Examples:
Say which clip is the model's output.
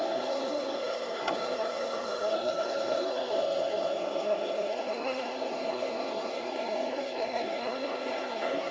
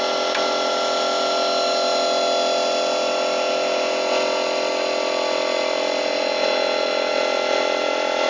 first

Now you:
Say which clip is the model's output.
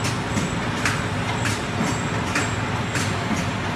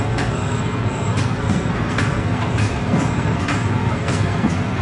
second